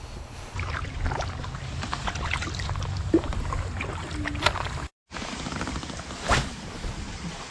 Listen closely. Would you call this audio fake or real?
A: real